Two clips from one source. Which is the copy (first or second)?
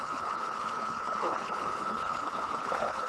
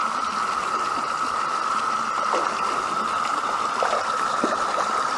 first